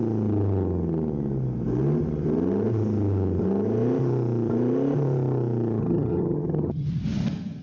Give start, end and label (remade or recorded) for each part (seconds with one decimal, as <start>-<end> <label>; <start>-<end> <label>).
0.0-5.8 recorded; 5.8-6.9 remade; 6.9-7.6 recorded